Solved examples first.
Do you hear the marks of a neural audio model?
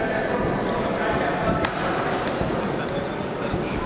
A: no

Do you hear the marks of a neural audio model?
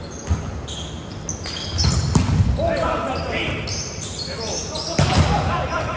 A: no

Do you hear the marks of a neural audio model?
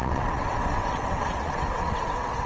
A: yes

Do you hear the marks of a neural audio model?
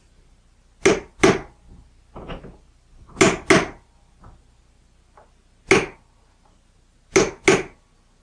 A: no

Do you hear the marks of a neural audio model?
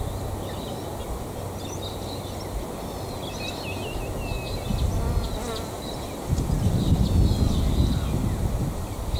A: no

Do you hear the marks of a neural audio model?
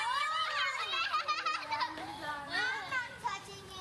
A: yes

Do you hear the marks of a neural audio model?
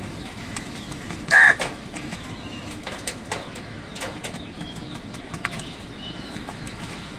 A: yes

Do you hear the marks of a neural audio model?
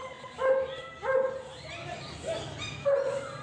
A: no